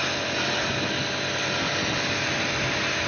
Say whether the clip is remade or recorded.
recorded